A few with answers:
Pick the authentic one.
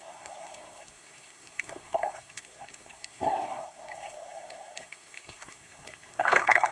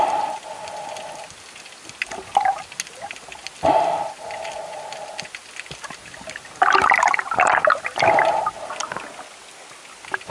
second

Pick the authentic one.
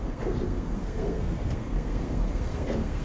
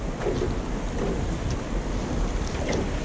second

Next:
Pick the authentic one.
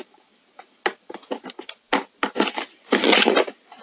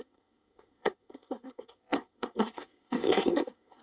first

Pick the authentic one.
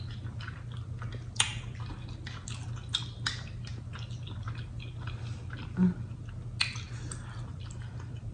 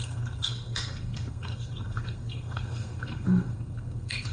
first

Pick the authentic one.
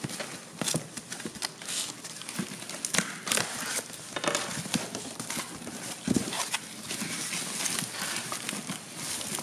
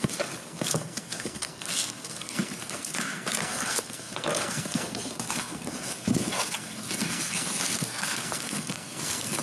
first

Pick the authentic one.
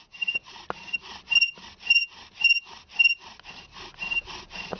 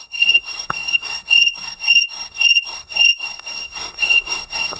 first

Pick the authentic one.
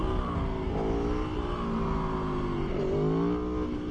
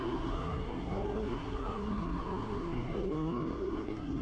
first